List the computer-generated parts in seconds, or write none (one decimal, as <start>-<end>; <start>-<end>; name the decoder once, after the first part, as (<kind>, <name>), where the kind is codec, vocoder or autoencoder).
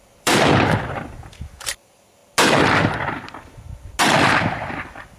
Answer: 0.0-2.2 (vocoder, BigVGAN v2); 4.0-5.2